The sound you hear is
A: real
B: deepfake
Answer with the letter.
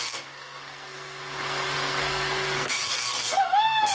B